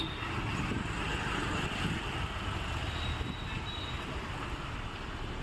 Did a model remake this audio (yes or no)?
no